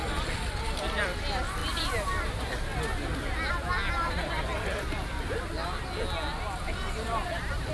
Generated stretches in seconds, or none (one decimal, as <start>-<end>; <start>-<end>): 0.0-2.7; 3.5-4.3; 6.6-7.7